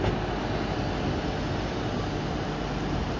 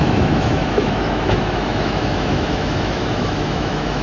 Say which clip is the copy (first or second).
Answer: second